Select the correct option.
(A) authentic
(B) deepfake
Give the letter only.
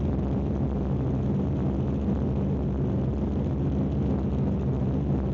A